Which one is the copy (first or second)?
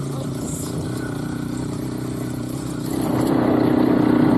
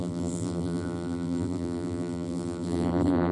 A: second